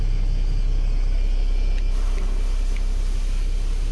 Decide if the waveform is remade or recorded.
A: recorded